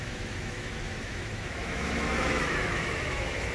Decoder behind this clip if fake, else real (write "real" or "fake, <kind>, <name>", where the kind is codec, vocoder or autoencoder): fake, autoencoder, DAC-VAE